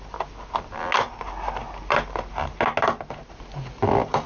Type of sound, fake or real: real